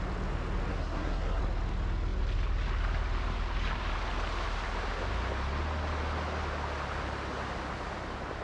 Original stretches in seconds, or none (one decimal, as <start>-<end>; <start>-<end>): 0.0-0.7; 1.4-8.4